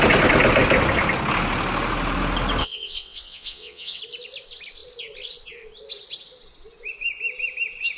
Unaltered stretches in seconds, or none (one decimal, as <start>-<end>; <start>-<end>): 0.0-2.6; 4.0-8.0

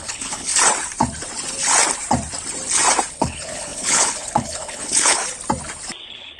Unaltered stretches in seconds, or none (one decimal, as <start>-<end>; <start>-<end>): 0.5-3.1; 5.2-6.0

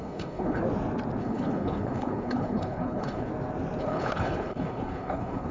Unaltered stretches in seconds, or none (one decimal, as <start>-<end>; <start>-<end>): 0.6-1.2; 3.3-3.8

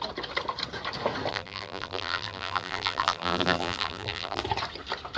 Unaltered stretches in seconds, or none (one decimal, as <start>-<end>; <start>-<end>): 0.0-1.3; 4.4-5.2

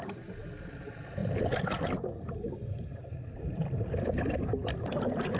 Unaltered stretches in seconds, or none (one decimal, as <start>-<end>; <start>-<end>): 0.0-1.2; 4.4-5.4

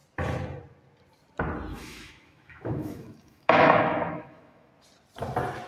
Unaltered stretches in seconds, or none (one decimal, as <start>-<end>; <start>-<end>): 0.0-1.7; 4.7-5.7

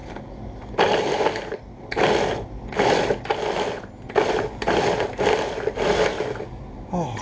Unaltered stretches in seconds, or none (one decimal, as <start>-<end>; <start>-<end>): 0.0-7.2

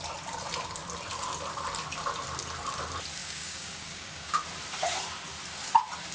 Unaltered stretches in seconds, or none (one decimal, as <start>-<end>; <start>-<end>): 0.0-3.2; 4.4-6.1